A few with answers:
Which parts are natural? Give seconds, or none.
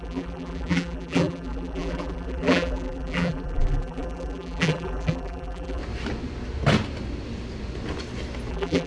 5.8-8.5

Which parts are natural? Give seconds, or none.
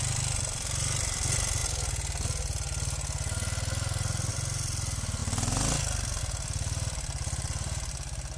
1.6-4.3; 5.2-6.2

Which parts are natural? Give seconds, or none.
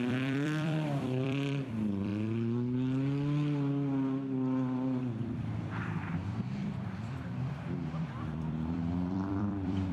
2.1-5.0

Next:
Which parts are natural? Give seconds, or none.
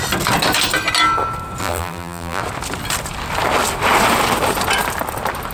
0.0-1.6; 2.4-5.5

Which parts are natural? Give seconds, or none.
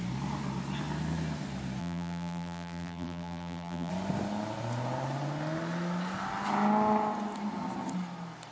0.0-1.8; 3.9-8.5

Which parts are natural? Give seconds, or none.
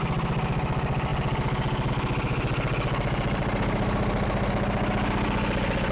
0.0-3.4; 4.5-5.9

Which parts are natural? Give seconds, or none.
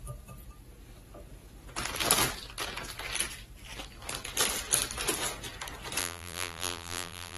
0.0-6.0